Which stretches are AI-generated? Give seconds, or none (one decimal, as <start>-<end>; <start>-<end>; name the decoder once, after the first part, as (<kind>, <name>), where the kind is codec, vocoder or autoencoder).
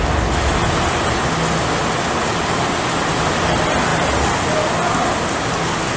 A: none